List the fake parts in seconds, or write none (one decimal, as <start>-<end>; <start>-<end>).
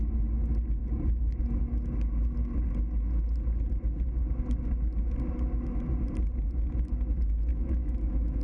7.5-8.4